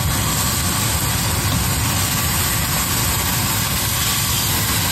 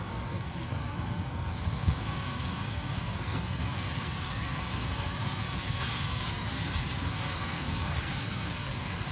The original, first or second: first